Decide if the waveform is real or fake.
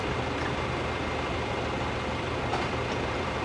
fake